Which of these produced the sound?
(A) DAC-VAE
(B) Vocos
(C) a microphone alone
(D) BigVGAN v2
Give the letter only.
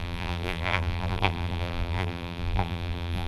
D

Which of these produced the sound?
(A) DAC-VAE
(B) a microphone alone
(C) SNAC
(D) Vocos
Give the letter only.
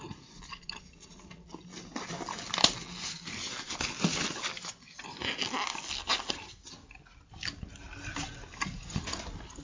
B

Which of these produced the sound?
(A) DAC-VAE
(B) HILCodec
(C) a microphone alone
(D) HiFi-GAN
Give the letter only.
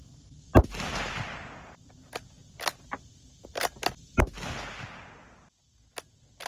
C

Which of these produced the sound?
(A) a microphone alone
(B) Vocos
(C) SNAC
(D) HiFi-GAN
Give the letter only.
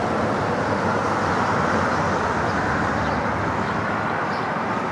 A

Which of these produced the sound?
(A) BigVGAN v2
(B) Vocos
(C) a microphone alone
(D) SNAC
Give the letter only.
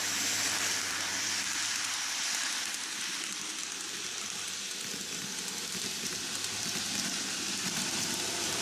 A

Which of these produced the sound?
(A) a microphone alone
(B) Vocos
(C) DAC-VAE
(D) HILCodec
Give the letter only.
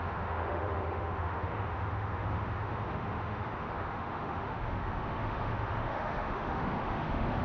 C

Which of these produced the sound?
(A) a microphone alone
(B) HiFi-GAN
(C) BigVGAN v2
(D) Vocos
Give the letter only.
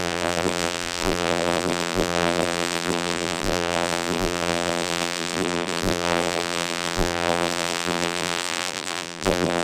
C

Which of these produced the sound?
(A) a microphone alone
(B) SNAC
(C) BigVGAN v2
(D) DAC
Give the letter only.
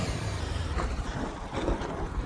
A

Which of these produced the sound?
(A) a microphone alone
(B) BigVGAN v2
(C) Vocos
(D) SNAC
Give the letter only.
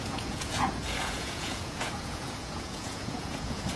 C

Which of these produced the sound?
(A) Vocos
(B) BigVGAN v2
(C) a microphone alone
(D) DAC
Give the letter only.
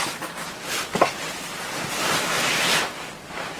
C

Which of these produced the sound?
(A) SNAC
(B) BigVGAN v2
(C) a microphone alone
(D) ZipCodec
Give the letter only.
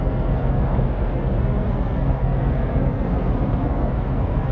A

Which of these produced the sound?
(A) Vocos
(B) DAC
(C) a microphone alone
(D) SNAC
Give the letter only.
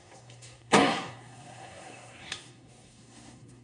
D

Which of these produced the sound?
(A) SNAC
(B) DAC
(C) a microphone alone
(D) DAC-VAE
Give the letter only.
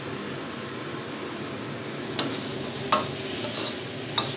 C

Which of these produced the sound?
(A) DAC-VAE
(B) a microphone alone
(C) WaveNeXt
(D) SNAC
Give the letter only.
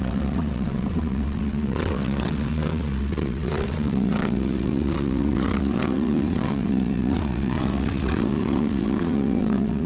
C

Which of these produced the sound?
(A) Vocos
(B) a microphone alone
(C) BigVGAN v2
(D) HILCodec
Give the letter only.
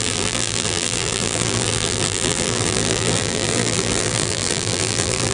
C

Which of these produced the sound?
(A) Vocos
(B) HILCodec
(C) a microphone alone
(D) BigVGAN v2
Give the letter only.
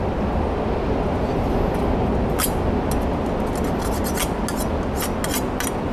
C